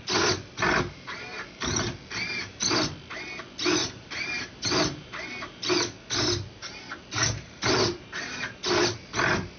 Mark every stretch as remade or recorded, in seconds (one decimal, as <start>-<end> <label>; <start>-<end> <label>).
0.0-3.8 recorded; 3.8-5.7 remade; 5.7-7.2 recorded; 7.2-8.6 remade; 8.6-9.6 recorded